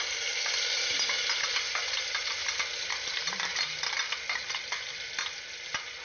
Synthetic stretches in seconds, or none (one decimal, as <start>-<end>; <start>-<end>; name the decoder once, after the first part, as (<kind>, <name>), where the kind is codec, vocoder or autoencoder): none